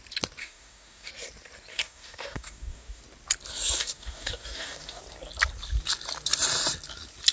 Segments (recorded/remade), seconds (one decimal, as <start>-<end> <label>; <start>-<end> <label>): 0.0-0.4 recorded; 0.4-1.1 remade; 1.1-1.7 recorded; 1.7-3.0 remade; 3.0-3.8 recorded; 3.8-5.0 remade; 5.0-7.3 recorded